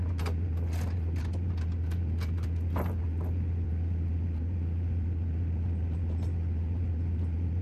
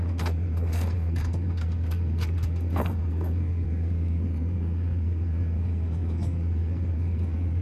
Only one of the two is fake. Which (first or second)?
second